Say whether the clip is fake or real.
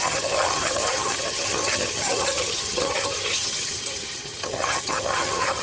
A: fake